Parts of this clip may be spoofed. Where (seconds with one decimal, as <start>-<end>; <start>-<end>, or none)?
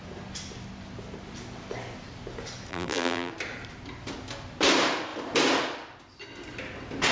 2.7-3.3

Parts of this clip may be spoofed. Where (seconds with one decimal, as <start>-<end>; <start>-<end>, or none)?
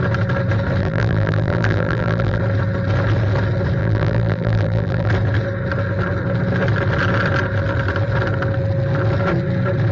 0.8-2.4; 3.8-5.1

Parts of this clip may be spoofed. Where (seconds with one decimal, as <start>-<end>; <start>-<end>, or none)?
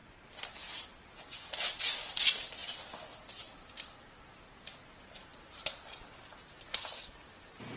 none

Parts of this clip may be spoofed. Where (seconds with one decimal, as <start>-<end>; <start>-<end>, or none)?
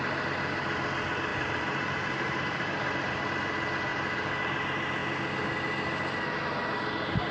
1.3-3.2; 3.9-4.5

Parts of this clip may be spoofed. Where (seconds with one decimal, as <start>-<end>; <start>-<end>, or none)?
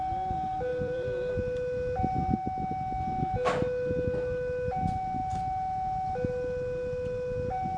0.7-1.3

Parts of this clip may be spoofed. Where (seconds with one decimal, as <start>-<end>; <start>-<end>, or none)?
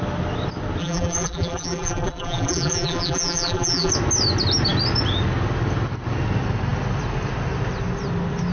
0.8-3.9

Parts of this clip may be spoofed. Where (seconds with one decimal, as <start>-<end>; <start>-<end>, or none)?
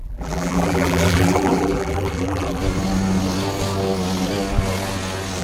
0.0-2.6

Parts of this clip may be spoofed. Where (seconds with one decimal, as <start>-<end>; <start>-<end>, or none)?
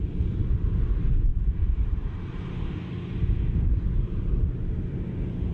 1.3-2.4